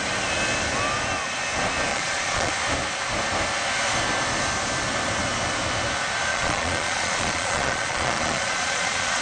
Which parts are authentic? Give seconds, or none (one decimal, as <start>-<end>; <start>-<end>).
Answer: 0.0-1.9; 2.5-6.3